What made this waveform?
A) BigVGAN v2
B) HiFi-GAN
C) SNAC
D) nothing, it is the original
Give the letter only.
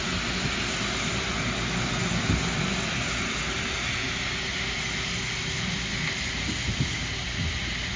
D